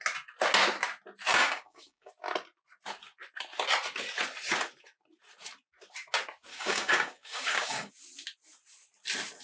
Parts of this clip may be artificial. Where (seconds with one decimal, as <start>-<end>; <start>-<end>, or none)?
1.3-2.1; 6.5-7.9